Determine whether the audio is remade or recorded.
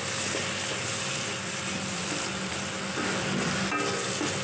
recorded